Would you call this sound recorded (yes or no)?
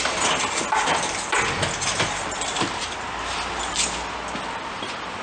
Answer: yes